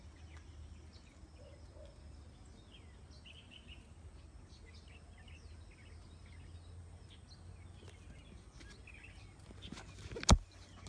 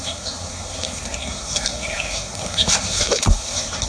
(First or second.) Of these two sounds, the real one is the first